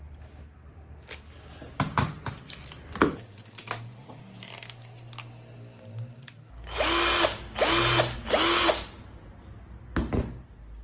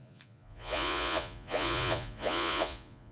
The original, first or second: first